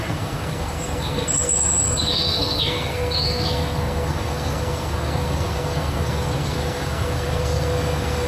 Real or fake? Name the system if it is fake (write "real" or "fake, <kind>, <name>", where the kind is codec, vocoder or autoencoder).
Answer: fake, codec, SNAC